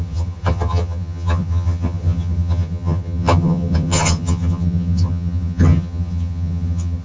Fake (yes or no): yes